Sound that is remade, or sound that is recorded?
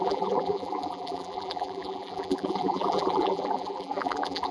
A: remade